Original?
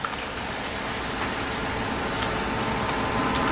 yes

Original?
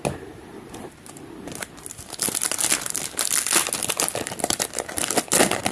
yes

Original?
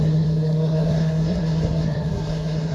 no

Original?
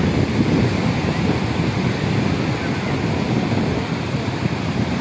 yes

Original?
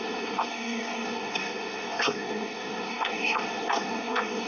no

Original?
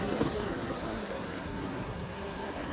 no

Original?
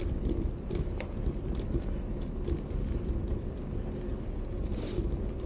yes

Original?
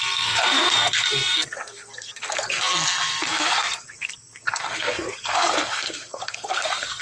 no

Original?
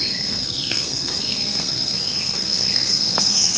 no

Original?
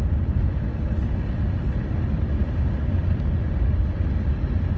yes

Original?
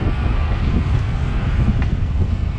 no